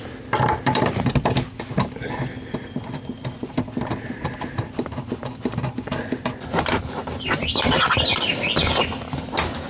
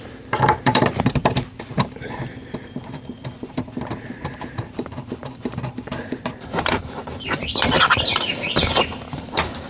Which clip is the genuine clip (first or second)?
first